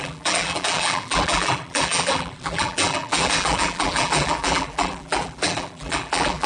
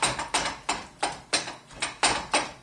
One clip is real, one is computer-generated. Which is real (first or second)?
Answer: second